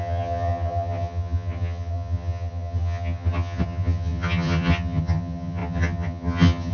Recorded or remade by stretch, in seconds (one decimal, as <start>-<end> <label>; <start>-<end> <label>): 0.0-6.7 remade